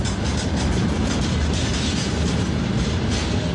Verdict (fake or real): real